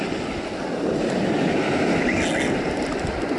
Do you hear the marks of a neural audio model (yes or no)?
no